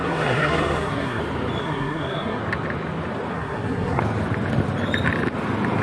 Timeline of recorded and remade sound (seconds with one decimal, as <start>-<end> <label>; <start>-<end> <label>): 0.0-1.2 remade; 1.2-1.6 recorded; 1.6-2.4 remade; 2.4-3.3 recorded; 3.3-4.0 remade; 4.0-5.8 recorded